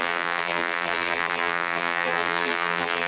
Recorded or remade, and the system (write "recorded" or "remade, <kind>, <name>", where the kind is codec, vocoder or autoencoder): remade, vocoder, BigVGAN v2